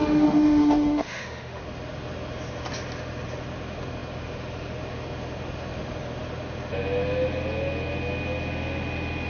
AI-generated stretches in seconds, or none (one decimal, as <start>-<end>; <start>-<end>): 0.0-1.6

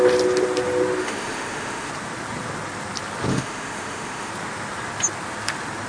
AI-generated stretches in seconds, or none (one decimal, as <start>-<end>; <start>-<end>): 1.0-1.9; 3.3-4.3

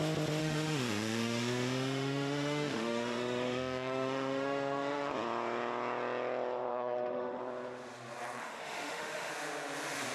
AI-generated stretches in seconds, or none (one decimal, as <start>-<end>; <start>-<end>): 0.4-5.1; 6.7-7.4; 8.4-9.3

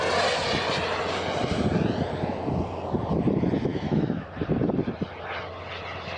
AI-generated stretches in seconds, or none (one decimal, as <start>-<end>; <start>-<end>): 3.7-4.3

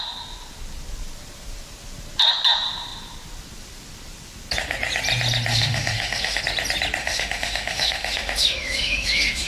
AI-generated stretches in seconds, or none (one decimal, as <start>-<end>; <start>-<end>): 5.5-6.4; 7.0-9.5

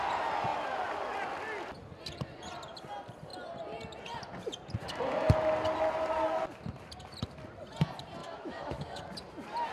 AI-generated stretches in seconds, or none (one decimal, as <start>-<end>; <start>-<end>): 8.2-9.0

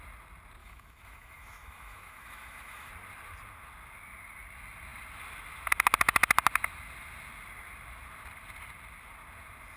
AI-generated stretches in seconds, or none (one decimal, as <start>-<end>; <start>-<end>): 0.6-2.9

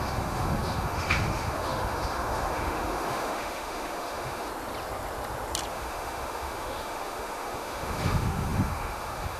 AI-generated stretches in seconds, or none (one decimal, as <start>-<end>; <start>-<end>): 0.0-4.5; 5.7-9.4